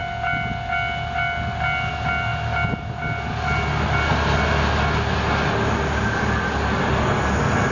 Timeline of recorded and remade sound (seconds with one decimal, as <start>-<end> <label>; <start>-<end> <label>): 0.0-7.7 recorded